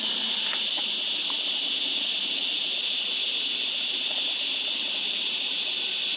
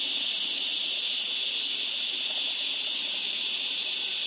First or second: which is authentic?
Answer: second